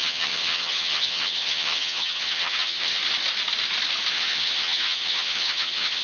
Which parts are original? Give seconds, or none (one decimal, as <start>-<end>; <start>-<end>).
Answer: 3.0-4.1